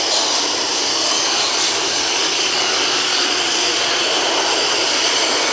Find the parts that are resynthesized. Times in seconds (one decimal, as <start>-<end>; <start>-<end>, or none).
0.9-3.3